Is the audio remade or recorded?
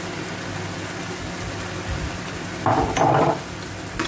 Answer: recorded